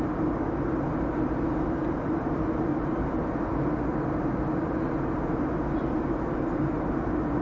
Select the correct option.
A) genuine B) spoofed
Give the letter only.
A